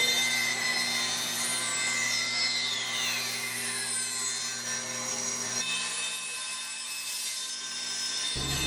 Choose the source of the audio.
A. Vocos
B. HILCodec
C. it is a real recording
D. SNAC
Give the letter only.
C